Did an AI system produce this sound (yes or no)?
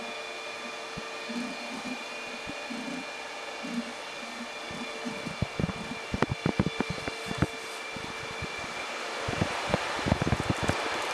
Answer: no